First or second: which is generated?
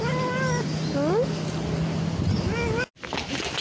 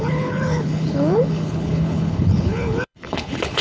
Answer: second